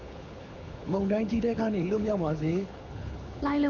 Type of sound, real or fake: fake